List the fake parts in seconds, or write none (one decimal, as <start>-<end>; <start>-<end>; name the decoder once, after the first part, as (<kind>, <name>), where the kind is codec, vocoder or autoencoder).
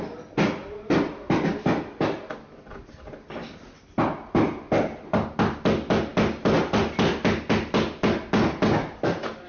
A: none